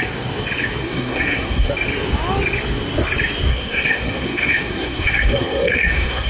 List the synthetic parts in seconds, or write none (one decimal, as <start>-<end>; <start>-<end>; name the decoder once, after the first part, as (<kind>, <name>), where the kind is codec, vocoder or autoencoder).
0.8-1.7 (codec, SNAC); 3.5-6.3